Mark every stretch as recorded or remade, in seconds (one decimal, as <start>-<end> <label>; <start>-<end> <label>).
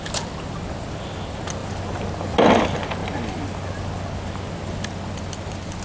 0.0-5.8 recorded